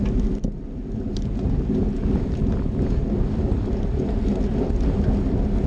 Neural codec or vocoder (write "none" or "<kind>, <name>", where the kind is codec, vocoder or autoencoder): none